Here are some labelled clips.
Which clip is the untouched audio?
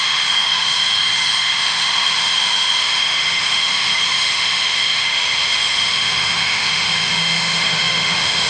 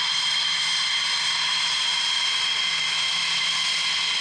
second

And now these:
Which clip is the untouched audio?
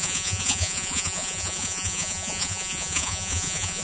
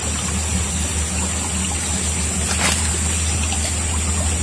second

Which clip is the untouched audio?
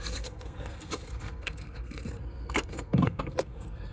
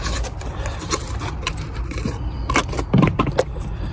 second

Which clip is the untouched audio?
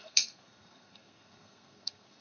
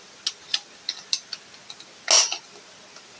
second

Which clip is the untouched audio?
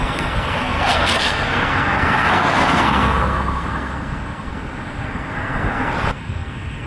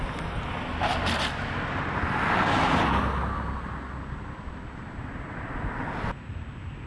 second